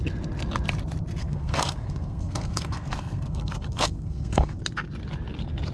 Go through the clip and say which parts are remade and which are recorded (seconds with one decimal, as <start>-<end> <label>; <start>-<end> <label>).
0.0-1.2 recorded; 1.2-4.6 remade; 4.6-5.7 recorded